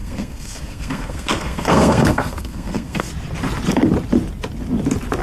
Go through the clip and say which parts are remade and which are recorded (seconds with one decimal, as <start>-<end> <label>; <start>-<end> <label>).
0.0-3.1 remade; 3.1-5.2 recorded